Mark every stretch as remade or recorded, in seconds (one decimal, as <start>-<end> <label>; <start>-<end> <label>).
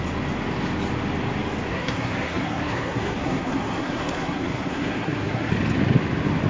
0.0-1.7 recorded; 1.7-5.5 remade; 5.5-6.5 recorded